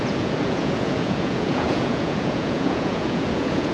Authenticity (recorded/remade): remade